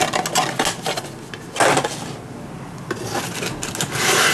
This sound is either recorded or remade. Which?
recorded